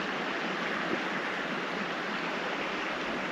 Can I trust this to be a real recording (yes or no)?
no